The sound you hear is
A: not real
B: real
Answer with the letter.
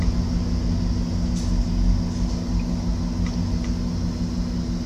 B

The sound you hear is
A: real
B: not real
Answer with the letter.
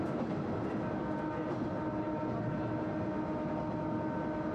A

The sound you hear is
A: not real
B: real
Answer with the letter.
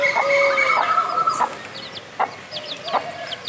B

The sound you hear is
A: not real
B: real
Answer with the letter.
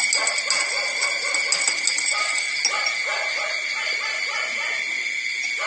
B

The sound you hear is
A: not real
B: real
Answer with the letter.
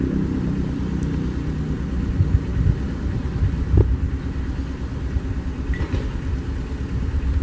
B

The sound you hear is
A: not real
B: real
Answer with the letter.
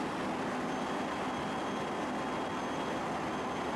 B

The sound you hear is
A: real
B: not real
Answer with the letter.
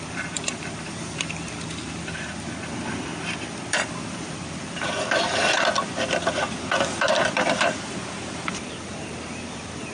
B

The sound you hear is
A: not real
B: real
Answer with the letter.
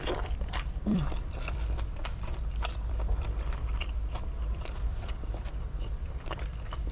A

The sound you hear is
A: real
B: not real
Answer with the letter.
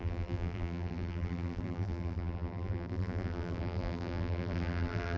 B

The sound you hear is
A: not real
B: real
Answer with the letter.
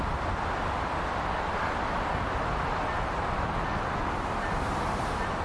B